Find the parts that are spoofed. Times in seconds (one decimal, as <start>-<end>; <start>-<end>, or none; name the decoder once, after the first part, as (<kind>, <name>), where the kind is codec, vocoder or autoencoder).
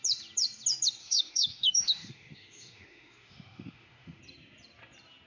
1.0-4.2 (autoencoder, DAC-VAE)